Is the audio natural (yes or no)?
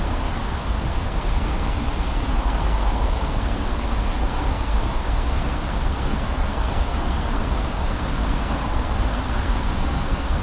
no